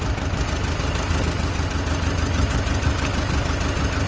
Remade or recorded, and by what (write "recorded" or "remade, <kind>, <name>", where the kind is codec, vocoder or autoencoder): recorded